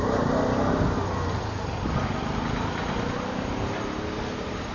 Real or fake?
real